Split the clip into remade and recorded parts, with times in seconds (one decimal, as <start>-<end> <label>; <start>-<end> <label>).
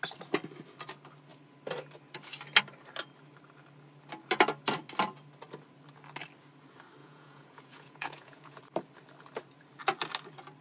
0.0-7.0 recorded; 7.0-8.6 remade; 8.6-10.6 recorded